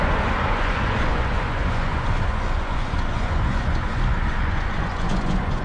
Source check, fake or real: fake